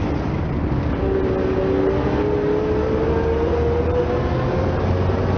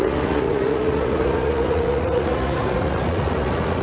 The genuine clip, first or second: first